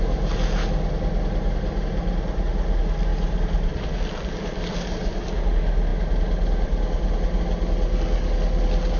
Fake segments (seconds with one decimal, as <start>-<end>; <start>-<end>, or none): none